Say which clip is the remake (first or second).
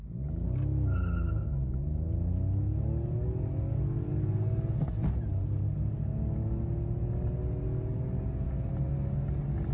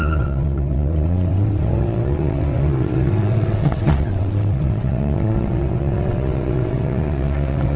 second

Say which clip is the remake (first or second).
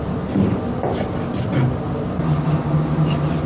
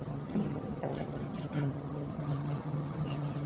second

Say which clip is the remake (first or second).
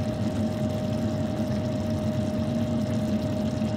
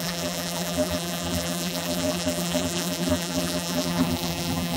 second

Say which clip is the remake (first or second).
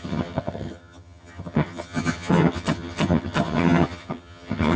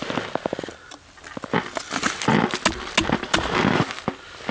first